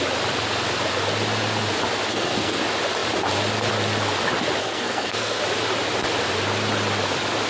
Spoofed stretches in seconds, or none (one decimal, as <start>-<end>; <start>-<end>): 2.1-2.6; 4.6-5.4